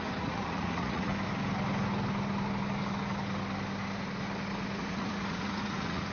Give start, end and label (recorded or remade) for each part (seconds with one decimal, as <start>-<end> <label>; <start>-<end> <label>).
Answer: 0.0-1.1 remade; 1.1-4.8 recorded; 4.8-6.1 remade